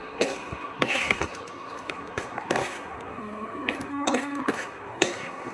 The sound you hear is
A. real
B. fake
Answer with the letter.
B